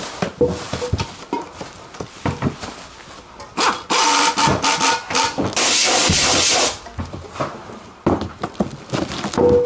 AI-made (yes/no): no